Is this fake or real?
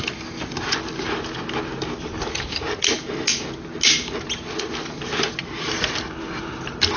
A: real